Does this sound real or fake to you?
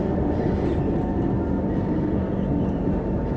real